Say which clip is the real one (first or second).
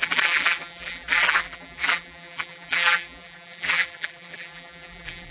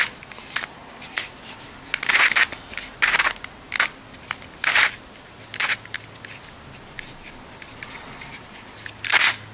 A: second